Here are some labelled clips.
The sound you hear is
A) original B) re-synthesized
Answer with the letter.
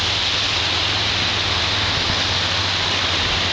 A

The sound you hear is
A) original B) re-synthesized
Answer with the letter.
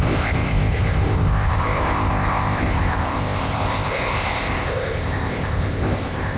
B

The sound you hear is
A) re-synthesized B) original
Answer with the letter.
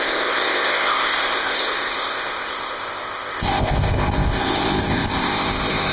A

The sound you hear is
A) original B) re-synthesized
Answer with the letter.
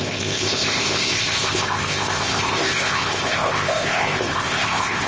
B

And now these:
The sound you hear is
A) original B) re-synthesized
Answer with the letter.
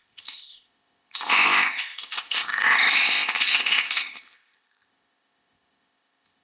B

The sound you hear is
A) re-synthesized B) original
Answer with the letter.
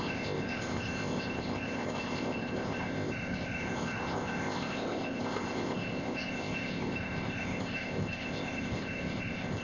A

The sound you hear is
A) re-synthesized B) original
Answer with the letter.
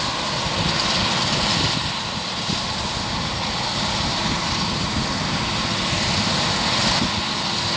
B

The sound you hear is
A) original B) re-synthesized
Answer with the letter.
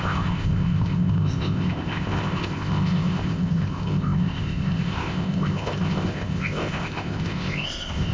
B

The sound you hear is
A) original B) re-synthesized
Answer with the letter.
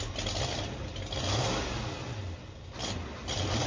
A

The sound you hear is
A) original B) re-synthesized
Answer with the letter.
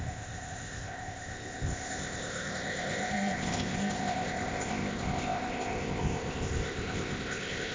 B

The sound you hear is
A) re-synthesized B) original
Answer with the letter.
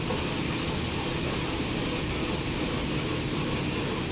B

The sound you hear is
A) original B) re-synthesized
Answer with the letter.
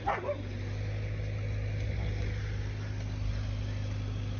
A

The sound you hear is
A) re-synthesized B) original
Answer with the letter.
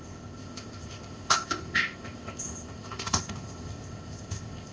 A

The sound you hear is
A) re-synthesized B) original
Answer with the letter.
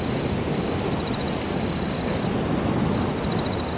B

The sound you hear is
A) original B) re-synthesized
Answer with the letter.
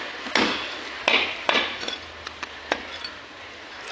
A